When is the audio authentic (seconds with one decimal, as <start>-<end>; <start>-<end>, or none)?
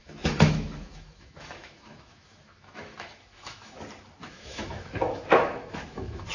3.8-4.2